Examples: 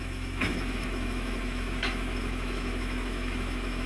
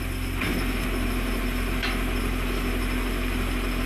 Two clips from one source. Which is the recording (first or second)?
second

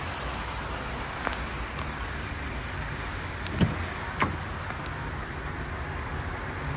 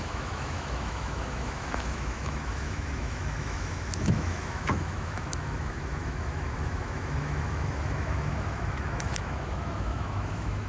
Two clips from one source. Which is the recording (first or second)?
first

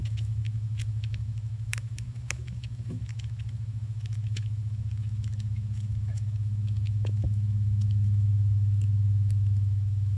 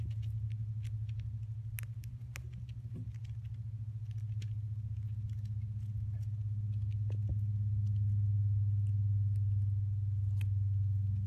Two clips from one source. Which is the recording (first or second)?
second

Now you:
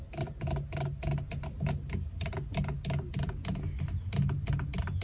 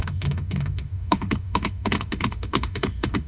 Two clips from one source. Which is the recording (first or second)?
first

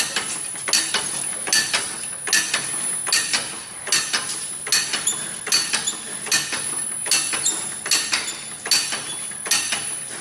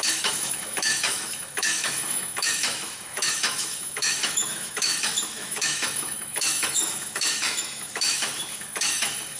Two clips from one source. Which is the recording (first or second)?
first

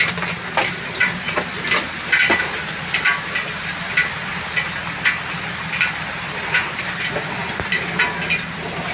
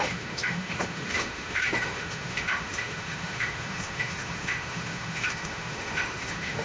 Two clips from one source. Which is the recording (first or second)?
first